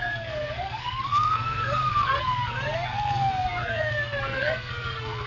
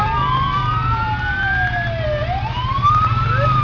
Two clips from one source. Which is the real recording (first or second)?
second